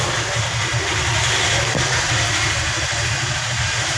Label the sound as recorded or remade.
recorded